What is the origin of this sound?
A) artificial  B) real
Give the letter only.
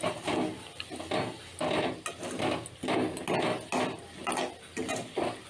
B